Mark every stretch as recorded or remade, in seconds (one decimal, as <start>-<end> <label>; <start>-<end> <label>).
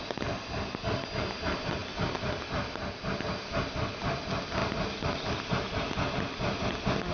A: 0.0-7.1 recorded